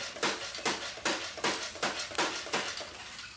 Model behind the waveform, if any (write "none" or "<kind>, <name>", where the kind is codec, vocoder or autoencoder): none